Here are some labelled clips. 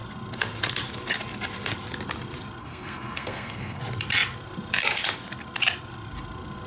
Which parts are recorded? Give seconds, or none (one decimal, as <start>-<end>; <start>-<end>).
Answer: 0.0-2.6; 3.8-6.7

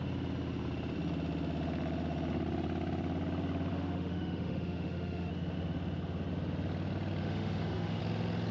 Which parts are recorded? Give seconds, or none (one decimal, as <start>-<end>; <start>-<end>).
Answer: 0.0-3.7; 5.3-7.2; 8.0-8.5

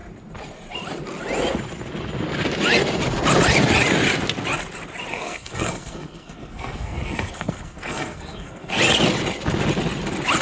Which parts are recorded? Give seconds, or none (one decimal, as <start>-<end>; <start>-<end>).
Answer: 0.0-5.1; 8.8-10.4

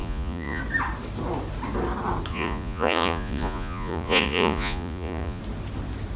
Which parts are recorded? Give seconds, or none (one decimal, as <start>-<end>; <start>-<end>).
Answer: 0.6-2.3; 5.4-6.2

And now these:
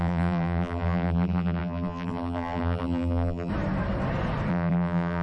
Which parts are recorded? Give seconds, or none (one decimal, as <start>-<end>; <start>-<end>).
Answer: 3.5-4.5